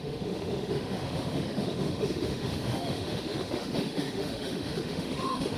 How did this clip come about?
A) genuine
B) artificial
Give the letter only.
B